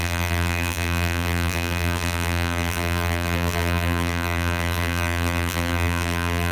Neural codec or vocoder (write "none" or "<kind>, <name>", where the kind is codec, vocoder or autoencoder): vocoder, BigVGAN v2